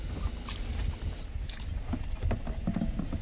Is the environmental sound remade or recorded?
recorded